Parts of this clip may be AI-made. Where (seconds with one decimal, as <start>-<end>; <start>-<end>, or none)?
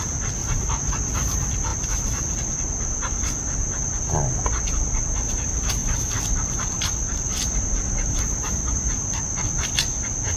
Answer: 0.4-0.9; 5.8-9.5